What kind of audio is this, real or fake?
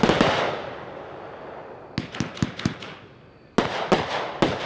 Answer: real